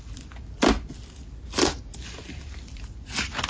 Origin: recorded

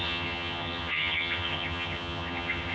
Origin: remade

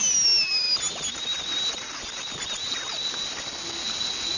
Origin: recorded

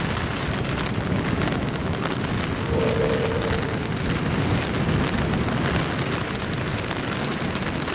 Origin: recorded